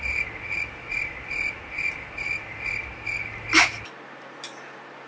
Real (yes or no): yes